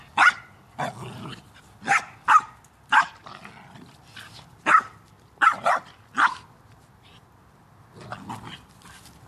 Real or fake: real